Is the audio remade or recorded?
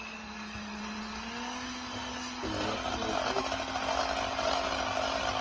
recorded